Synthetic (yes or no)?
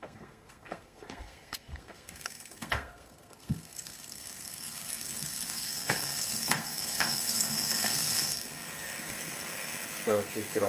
yes